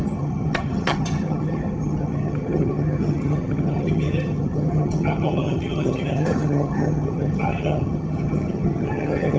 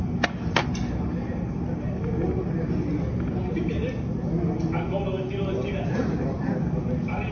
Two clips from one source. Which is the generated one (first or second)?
first